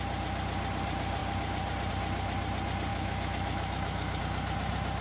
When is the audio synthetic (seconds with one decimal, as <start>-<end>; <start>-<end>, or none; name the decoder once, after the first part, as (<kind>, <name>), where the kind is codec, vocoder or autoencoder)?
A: 2.9-4.2 (autoencoder, DAC-VAE)